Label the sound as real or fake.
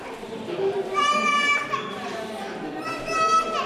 fake